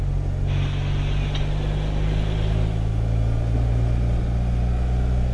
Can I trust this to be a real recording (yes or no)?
yes